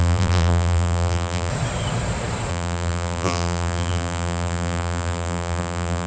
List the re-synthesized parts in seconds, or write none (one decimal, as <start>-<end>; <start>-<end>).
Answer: 0.0-1.5; 2.5-6.1